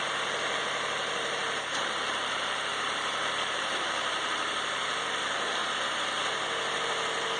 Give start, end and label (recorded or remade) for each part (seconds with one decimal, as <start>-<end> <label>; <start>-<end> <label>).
0.0-5.6 remade; 5.6-6.7 recorded; 6.7-7.4 remade